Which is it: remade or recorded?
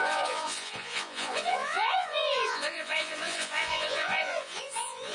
remade